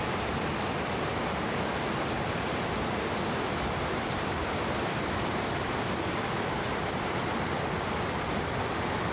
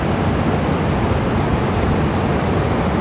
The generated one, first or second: first